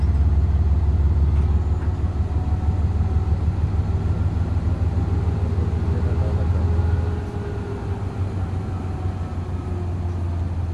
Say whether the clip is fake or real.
real